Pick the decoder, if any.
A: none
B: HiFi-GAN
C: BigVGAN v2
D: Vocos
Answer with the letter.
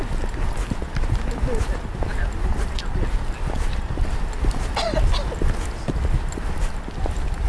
A